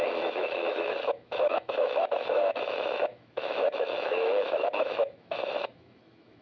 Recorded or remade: remade